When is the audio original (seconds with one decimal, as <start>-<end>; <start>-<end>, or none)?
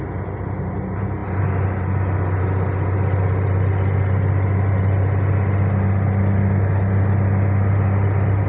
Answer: 0.0-8.5